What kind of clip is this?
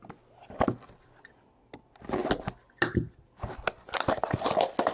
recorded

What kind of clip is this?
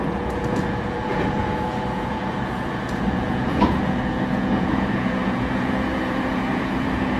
remade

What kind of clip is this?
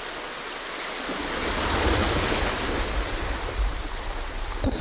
remade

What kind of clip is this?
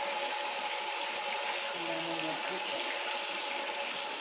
recorded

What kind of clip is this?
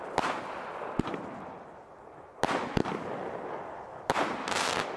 recorded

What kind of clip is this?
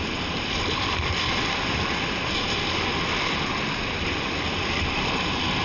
recorded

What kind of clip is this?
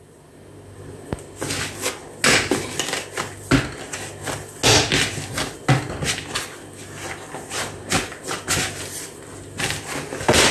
recorded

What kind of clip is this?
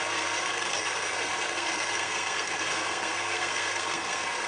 remade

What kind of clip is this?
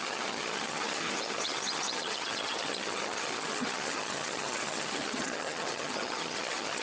remade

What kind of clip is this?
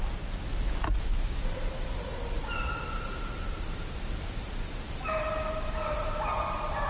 recorded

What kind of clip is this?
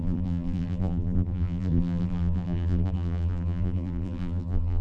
remade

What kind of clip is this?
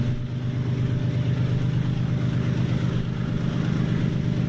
recorded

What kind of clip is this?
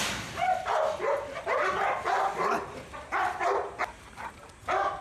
remade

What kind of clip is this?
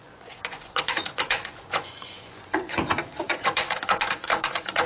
remade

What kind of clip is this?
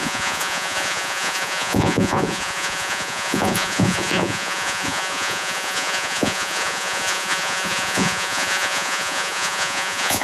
remade